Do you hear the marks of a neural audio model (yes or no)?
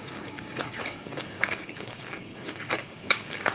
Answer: yes